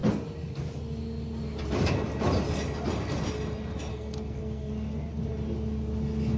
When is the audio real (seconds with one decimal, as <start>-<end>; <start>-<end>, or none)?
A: 0.0-3.9; 4.7-6.4